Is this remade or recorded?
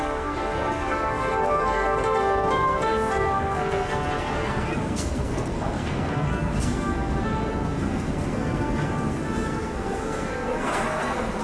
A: remade